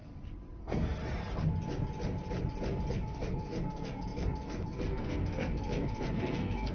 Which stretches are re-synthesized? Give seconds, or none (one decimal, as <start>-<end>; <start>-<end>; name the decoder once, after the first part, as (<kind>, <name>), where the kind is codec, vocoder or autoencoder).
0.6-1.0 (codec, SNAC); 2.9-6.7